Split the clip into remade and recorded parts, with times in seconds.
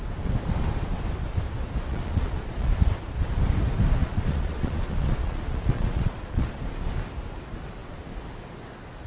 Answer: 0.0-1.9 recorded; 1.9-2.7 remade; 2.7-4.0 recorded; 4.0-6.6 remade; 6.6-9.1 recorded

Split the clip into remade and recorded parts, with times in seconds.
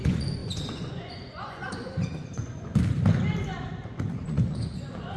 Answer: 0.0-2.7 remade; 2.7-4.1 recorded; 4.1-5.2 remade